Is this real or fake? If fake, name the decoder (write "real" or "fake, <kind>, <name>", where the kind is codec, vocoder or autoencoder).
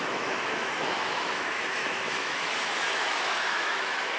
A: fake, autoencoder, DAC-VAE